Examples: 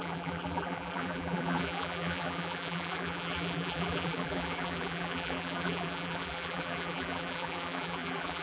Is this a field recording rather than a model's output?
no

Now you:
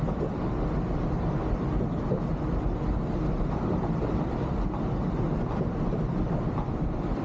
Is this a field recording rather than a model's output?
no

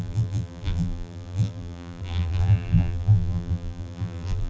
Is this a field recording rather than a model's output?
no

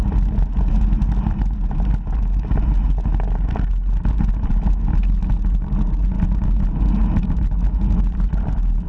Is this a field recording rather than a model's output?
yes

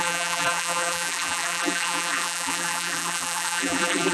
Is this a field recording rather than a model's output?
no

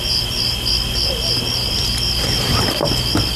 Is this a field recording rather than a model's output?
no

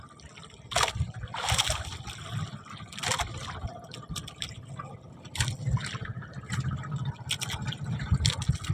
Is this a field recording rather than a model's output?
yes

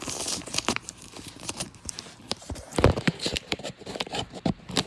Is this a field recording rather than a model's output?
no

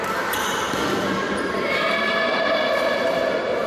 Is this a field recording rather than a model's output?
no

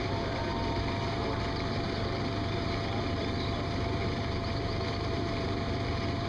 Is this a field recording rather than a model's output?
no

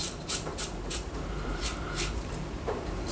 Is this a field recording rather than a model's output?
no